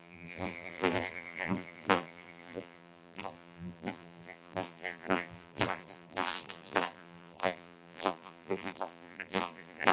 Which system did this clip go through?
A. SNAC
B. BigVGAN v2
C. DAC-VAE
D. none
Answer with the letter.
B